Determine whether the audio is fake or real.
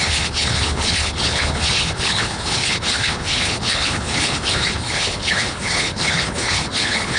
fake